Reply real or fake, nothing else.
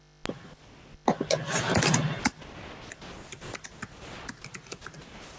real